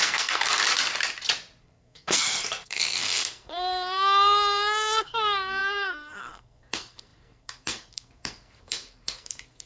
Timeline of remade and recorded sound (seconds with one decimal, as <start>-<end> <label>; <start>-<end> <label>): 0.0-0.6 remade; 0.6-1.6 recorded; 1.6-9.7 remade